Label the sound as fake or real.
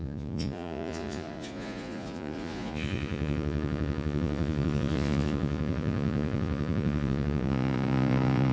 fake